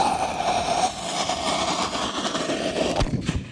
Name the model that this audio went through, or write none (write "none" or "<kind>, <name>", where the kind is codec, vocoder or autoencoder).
none